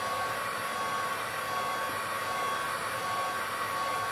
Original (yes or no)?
yes